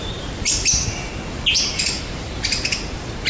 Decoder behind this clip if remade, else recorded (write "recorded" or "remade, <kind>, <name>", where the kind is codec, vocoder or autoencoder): recorded